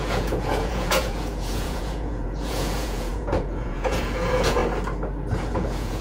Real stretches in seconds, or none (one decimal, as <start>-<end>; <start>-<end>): 4.6-5.5

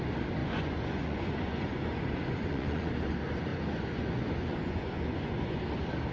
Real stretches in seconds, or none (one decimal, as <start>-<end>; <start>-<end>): 0.0-0.4; 2.9-3.5; 5.6-6.1

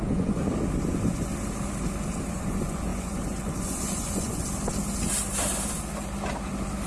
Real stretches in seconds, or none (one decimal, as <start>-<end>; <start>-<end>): 0.4-0.9; 1.3-2.3; 4.4-6.9

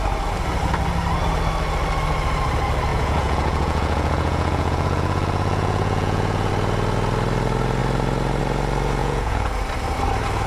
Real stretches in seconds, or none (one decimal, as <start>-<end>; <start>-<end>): 0.0-2.9; 6.5-9.0; 9.5-10.5